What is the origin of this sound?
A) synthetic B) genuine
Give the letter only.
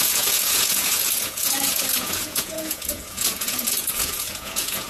A